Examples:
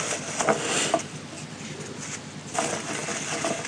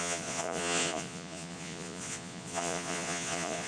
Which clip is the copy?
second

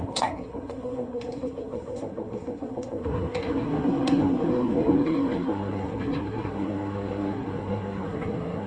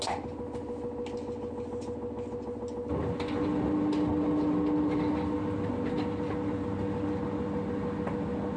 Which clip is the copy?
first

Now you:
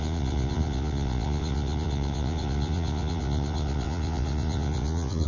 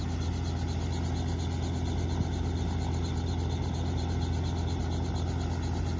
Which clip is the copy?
first